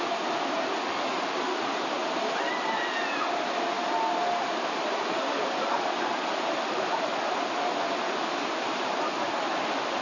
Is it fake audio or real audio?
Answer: real